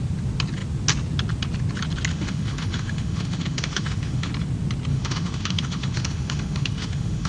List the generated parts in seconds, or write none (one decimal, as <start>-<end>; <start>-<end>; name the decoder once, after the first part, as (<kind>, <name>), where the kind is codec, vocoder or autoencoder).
2.1-4.3 (autoencoder, DAC-VAE); 4.9-7.3